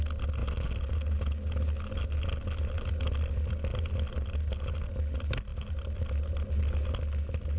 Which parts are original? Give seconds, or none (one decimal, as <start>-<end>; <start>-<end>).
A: 0.0-7.6

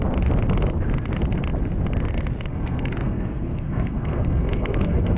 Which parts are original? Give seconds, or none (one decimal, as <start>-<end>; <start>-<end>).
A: 0.0-2.5